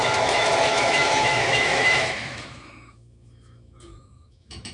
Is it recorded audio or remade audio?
remade